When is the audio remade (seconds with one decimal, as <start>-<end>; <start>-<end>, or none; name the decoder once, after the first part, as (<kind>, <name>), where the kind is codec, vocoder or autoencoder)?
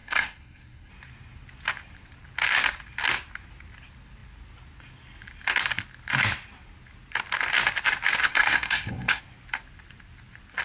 0.0-0.9 (codec, SNAC); 8.2-9.2